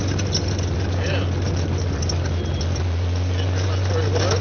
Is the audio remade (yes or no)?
no